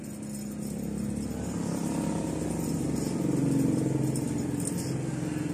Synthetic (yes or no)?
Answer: no